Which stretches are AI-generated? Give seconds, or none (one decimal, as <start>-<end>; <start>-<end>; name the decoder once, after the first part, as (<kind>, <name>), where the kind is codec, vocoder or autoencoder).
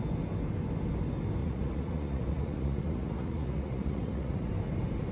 1.4-4.5 (vocoder, Vocos)